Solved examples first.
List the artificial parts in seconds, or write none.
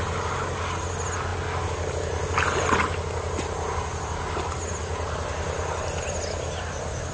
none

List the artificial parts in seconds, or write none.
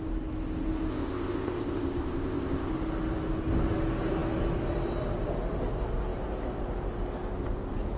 0.9-2.7 (codec, ZipCodec)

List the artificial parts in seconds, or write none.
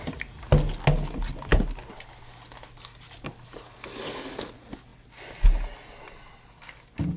none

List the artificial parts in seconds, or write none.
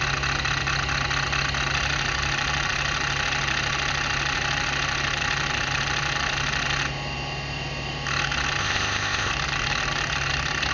8.6-9.3 (codec, ZipCodec)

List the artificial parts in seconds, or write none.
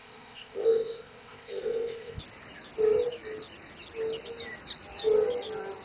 0.0-2.2 (codec, ZipCodec)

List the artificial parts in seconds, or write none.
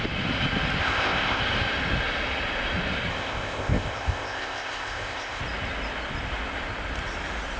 0.8-1.4 (codec, ZipCodec); 3.1-5.4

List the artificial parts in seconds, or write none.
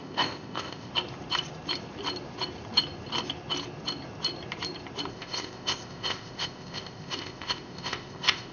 0.0-0.9 (codec, ZipCodec); 5.1-8.5